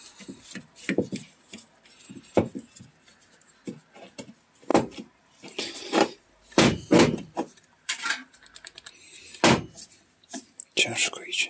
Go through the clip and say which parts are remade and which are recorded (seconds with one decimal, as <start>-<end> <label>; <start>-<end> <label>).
0.0-4.7 recorded; 4.7-8.3 remade; 8.3-11.5 recorded

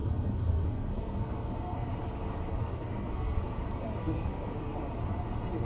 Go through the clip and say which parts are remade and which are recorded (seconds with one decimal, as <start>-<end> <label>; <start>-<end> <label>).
0.0-1.9 remade; 1.9-2.5 recorded; 2.5-3.6 remade; 3.6-4.0 recorded; 4.0-4.8 remade; 4.8-5.6 recorded

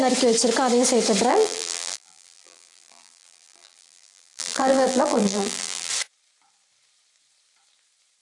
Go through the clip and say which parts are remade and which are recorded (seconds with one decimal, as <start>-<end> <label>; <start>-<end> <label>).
0.0-1.3 recorded; 1.3-5.9 remade; 5.9-8.2 recorded

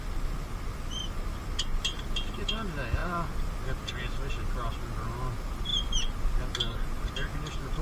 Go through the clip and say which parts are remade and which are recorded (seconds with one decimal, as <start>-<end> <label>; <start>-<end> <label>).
0.0-3.0 recorded; 3.0-3.6 remade; 3.6-7.8 recorded

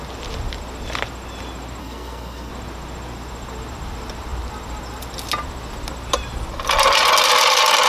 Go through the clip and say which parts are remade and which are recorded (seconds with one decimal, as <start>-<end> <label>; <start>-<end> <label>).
0.0-1.8 recorded; 1.8-2.5 remade; 2.5-7.9 recorded